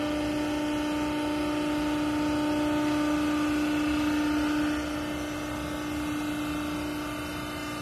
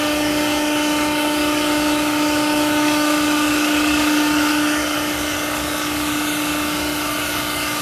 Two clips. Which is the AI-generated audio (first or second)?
second